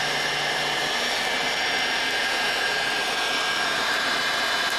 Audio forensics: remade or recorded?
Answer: recorded